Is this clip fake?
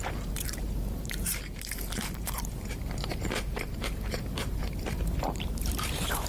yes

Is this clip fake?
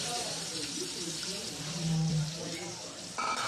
yes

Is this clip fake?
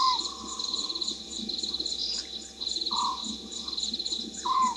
yes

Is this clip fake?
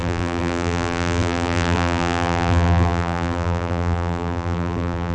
yes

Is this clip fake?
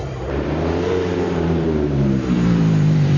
yes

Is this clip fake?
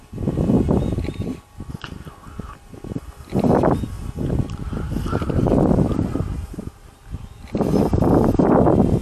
no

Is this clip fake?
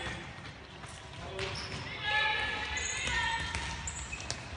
no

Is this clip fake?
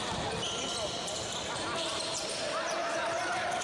yes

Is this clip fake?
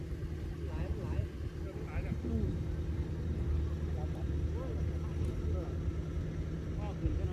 no